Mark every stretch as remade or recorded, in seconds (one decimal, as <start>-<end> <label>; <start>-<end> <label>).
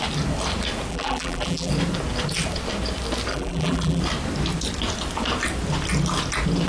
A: 0.0-0.9 recorded; 0.9-1.7 remade; 1.7-3.3 recorded; 3.3-4.0 remade; 4.0-6.7 recorded